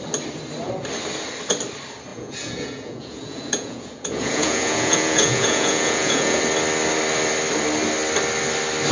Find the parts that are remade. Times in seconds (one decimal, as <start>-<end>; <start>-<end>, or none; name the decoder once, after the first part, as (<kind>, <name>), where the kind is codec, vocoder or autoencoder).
2.1-6.4 (vocoder, Vocos)